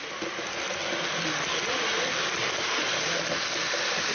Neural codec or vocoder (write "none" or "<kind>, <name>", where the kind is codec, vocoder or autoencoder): none